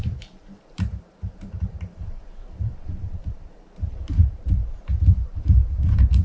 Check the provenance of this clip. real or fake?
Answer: fake